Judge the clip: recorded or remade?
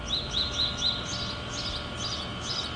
recorded